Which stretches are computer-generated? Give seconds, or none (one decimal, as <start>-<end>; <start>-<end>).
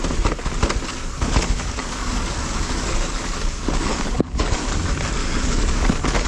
0.9-4.7; 5.2-6.3